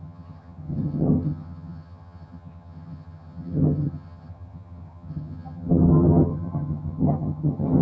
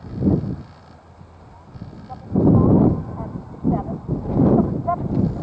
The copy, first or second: first